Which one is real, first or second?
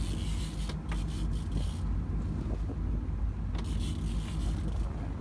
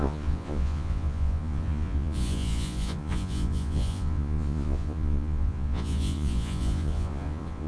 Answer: first